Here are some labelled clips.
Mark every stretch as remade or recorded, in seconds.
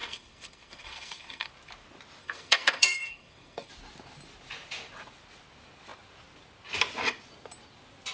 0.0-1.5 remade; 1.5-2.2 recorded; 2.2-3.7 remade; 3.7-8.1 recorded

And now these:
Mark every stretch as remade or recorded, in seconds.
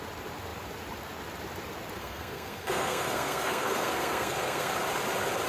0.0-2.0 recorded; 2.0-4.7 remade; 4.7-5.5 recorded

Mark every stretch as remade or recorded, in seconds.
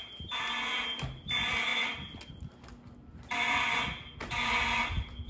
0.0-5.3 recorded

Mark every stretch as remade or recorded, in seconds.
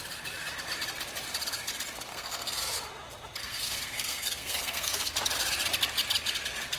0.0-2.1 recorded; 2.1-2.6 remade; 2.6-3.4 recorded; 3.4-5.1 remade; 5.1-6.8 recorded